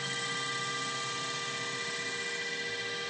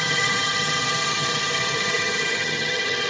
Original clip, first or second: first